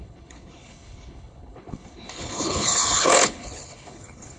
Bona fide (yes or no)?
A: no